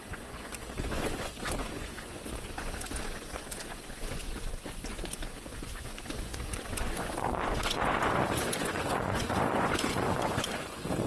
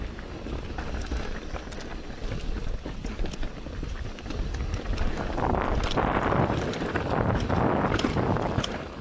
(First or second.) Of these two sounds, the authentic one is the second